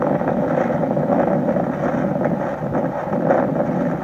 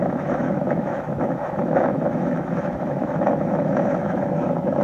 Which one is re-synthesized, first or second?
second